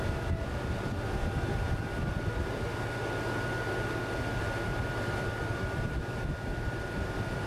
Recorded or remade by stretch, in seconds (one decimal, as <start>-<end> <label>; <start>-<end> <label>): 0.0-1.5 recorded; 1.5-2.3 remade; 2.3-4.9 recorded; 4.9-6.0 remade; 6.0-7.5 recorded